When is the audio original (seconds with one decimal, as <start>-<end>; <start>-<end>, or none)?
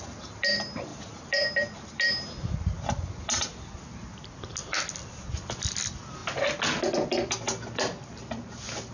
0.0-8.9